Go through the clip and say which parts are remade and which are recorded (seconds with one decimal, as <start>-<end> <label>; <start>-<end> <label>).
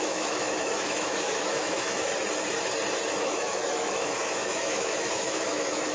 0.0-2.1 remade; 2.1-3.2 recorded; 3.2-5.9 remade